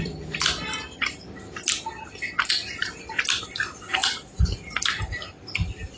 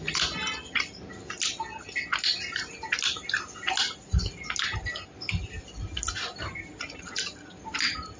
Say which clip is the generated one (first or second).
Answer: first